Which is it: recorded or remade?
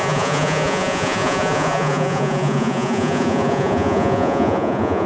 remade